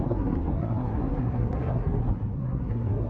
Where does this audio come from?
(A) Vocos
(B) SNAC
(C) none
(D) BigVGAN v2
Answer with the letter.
B